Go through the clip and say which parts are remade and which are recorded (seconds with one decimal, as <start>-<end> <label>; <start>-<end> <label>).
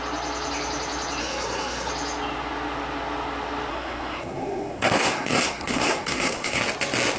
0.0-1.2 recorded; 1.2-1.9 remade; 1.9-3.7 recorded; 3.7-6.6 remade; 6.6-7.2 recorded